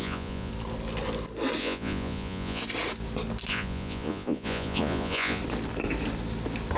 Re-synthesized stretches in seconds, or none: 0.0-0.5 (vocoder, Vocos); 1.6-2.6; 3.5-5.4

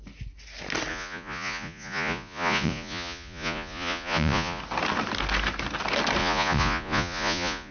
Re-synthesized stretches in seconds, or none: 0.9-4.6 (vocoder, Vocos); 6.2-7.7

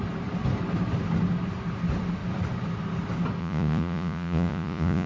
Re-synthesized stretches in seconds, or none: 3.4-5.1 (vocoder, Vocos)

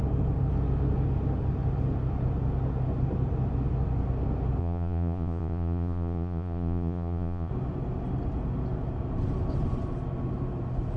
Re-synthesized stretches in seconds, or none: 4.6-7.5 (vocoder, Vocos)

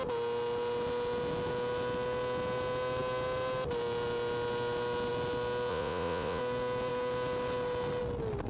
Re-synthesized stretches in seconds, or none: 5.7-6.4 (vocoder, Vocos)

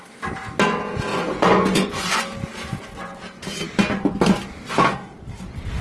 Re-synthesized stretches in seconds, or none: 1.1-2.2 (vocoder, Vocos)

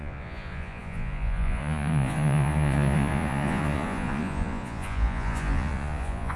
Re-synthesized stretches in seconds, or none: 0.0-6.4 (vocoder, Vocos)

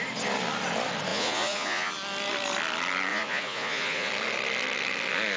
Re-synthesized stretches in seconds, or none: 1.1-1.9 (vocoder, Vocos); 3.1-4.1